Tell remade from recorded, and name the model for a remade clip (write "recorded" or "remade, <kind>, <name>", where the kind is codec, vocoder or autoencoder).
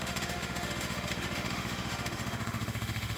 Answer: remade, autoencoder, DAC-VAE